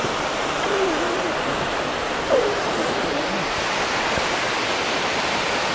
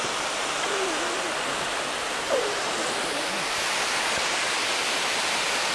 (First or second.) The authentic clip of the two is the second